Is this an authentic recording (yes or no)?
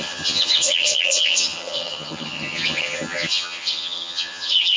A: no